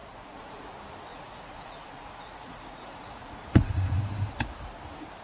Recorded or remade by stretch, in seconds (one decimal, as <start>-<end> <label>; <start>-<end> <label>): 0.0-0.7 remade; 0.7-1.1 recorded; 1.1-4.0 remade; 4.0-5.2 recorded

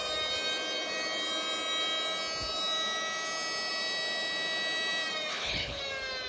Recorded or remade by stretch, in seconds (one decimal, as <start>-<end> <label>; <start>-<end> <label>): 0.0-5.3 recorded; 5.3-5.8 remade; 5.8-6.3 recorded

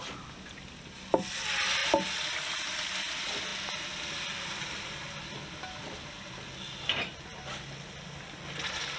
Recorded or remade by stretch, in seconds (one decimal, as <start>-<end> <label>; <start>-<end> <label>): 0.0-9.0 recorded

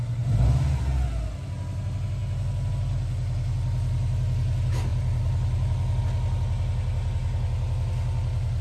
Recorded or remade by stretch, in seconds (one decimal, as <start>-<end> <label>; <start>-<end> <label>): 0.0-4.9 recorded; 4.9-6.0 remade; 6.0-8.6 recorded

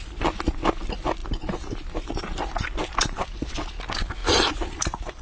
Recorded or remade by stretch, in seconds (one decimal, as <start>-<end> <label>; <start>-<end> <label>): 0.0-1.2 recorded; 1.2-3.5 remade; 3.5-4.2 recorded; 4.2-5.2 remade

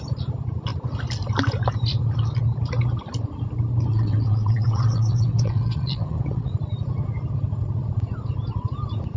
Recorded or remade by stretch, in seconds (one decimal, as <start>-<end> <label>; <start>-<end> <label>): 0.0-3.9 recorded; 3.9-6.5 remade; 6.5-9.2 recorded